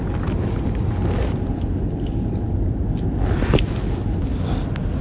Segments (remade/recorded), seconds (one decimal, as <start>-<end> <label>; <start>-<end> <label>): 0.0-5.0 recorded